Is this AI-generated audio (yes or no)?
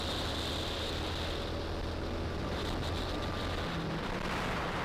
no